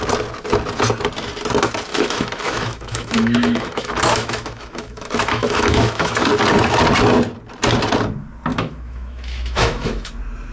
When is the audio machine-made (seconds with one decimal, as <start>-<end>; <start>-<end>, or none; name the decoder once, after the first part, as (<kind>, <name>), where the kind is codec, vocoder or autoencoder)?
1.9-6.1 (autoencoder, DAC-VAE); 8.5-10.1